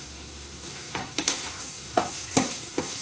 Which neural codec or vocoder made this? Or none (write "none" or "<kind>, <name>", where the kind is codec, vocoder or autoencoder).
codec, SNAC